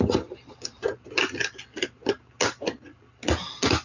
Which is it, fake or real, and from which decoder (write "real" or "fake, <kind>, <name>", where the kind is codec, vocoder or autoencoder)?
real